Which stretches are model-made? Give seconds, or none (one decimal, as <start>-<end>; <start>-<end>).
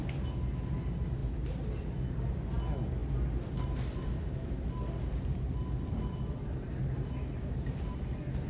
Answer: none